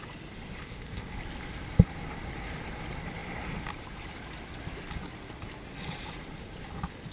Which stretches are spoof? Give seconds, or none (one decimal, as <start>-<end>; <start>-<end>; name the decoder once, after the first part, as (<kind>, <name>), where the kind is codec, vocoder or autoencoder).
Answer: 0.6-1.2 (codec, ZipCodec)